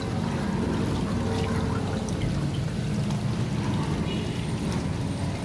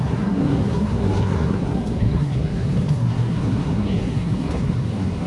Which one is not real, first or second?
second